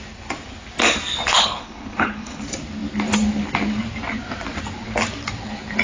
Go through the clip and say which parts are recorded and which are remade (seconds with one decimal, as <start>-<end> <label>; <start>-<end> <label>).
0.0-1.4 recorded; 1.4-2.4 remade; 2.4-5.8 recorded